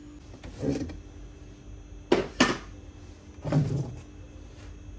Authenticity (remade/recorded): recorded